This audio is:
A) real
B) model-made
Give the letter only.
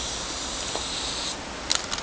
A